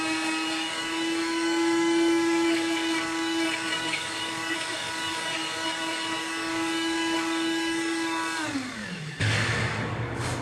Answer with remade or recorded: remade